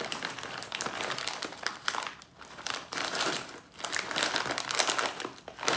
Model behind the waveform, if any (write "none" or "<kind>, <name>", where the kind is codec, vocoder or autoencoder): vocoder, BigVGAN v2